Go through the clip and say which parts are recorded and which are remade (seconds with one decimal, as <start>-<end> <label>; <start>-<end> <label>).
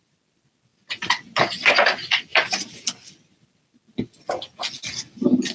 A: 0.0-5.5 recorded